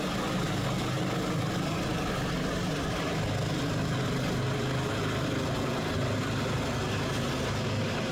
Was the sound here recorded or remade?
recorded